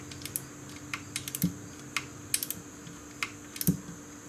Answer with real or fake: real